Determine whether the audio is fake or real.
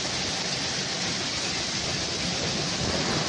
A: real